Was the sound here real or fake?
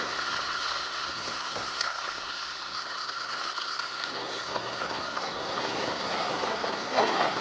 fake